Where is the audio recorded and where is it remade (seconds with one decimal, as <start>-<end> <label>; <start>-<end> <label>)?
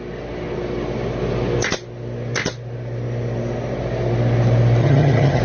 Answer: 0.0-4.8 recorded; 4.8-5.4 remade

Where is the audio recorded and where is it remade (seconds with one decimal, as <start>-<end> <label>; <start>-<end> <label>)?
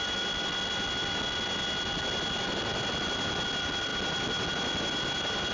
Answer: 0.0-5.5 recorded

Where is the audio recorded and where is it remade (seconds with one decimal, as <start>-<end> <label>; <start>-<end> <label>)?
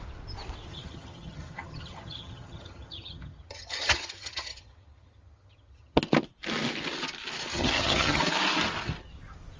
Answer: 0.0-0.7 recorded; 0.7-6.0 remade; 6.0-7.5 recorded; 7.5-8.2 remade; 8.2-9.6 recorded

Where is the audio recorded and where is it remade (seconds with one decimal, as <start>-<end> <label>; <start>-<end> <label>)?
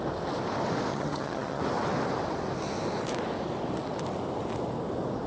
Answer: 0.0-0.9 recorded; 0.9-1.6 remade; 1.6-5.3 recorded